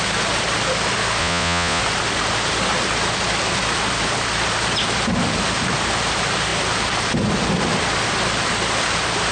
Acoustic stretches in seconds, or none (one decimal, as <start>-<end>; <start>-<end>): 0.0-1.2; 1.8-9.3